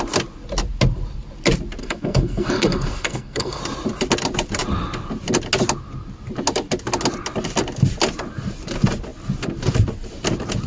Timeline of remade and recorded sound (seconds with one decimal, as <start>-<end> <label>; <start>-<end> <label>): 0.0-1.8 recorded; 1.8-3.6 remade; 3.6-10.7 recorded